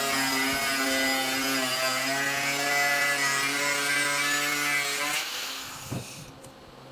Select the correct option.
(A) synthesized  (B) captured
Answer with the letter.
B